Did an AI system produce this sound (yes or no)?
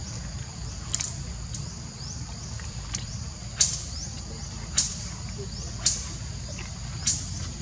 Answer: yes